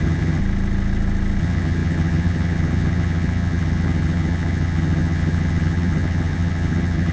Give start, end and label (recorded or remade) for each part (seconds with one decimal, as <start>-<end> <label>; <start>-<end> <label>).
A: 0.0-0.4 remade; 0.4-1.4 recorded; 1.4-7.1 remade